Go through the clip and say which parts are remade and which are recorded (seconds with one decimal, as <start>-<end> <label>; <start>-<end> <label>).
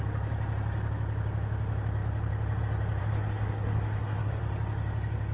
0.0-3.0 recorded; 3.0-4.4 remade; 4.4-5.3 recorded